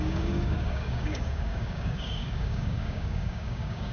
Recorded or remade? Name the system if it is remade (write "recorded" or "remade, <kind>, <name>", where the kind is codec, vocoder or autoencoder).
remade, codec, DAC